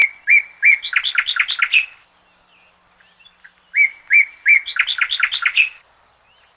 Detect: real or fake real